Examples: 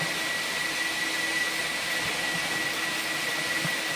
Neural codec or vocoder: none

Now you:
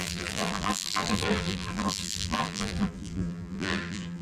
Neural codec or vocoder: vocoder, BigVGAN v2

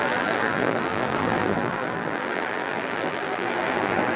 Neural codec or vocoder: vocoder, BigVGAN v2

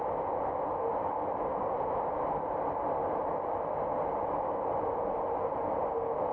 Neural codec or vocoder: none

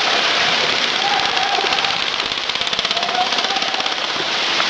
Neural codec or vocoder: vocoder, BigVGAN v2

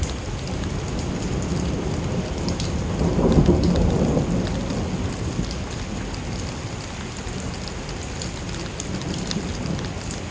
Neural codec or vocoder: none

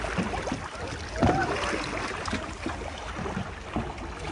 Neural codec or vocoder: none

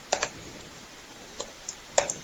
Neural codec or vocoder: vocoder, BigVGAN v2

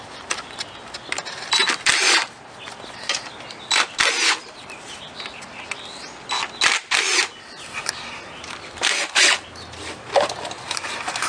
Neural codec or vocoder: none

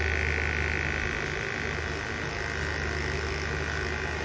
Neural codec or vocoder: none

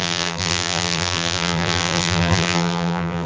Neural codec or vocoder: vocoder, BigVGAN v2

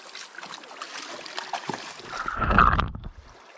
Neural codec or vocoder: none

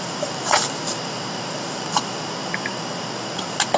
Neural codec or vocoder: vocoder, BigVGAN v2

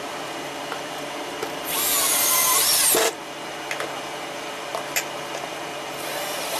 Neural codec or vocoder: vocoder, BigVGAN v2